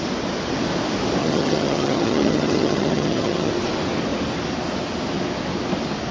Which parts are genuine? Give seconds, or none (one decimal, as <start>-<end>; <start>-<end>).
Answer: 0.0-1.2; 3.5-6.1